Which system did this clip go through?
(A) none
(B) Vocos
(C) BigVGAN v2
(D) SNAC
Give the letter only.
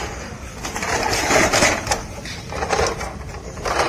C